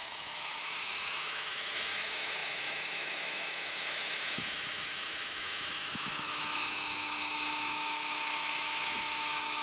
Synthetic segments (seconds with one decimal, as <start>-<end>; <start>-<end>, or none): 0.0-9.6